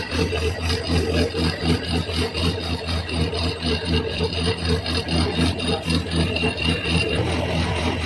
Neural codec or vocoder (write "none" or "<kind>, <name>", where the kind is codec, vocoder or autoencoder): none